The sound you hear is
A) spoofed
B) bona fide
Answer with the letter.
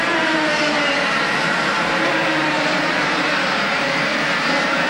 A